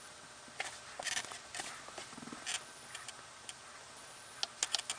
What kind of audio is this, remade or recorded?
recorded